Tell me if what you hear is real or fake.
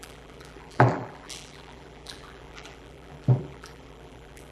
fake